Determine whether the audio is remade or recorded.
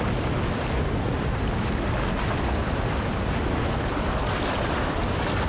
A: recorded